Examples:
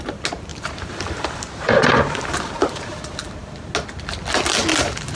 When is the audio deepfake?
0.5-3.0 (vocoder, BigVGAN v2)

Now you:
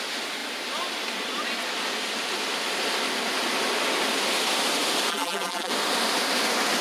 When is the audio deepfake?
5.1-5.7 (vocoder, BigVGAN v2)

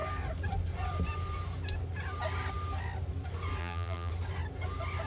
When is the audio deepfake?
3.6-4.1 (vocoder, BigVGAN v2)

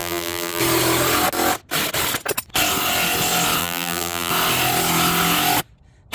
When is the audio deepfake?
0.0-0.6 (vocoder, BigVGAN v2); 3.6-4.3

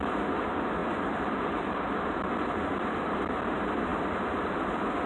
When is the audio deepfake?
0.8-3.2 (vocoder, BigVGAN v2); 3.9-4.6

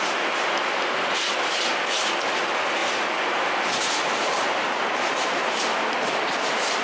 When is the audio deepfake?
2.8-5.6 (vocoder, BigVGAN v2)

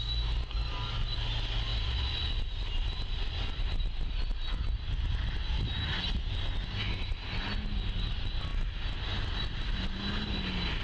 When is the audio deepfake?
1.7-4.0 (vocoder, BigVGAN v2)